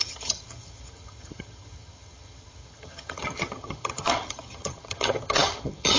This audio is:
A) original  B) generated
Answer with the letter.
B